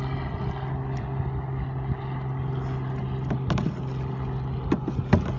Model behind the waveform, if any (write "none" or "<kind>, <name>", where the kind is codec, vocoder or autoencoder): none